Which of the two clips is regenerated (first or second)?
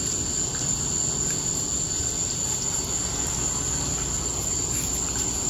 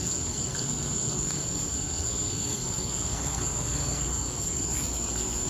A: second